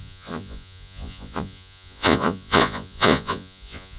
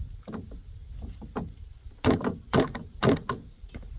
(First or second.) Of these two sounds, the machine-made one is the first